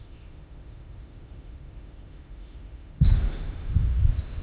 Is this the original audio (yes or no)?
no